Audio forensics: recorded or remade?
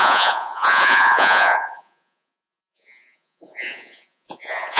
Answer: remade